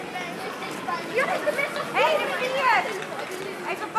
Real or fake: real